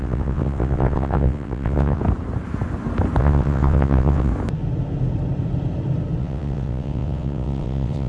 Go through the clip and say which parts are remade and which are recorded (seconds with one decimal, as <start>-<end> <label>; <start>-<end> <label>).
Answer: 0.0-2.0 remade; 2.0-3.2 recorded; 3.2-4.3 remade; 4.3-6.2 recorded; 6.2-8.1 remade